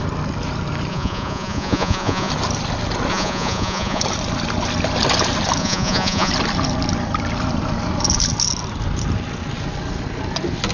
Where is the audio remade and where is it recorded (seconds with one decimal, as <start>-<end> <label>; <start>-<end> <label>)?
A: 0.0-0.9 recorded; 0.9-2.3 remade; 2.3-3.1 recorded; 3.1-4.0 remade; 4.0-5.6 recorded; 5.6-6.3 remade; 6.3-10.7 recorded